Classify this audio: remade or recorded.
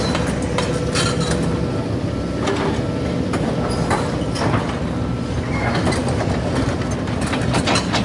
recorded